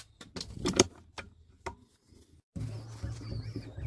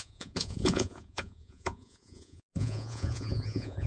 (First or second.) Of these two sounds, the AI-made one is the second